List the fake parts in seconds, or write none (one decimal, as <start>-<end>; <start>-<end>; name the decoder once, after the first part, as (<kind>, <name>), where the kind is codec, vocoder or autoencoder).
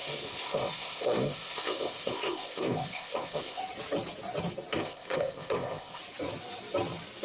0.0-3.6 (codec, ZipCodec); 4.7-6.0